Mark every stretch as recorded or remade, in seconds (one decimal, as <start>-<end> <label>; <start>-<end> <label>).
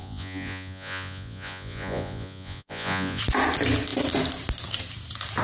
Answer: 0.0-3.2 remade; 3.2-5.4 recorded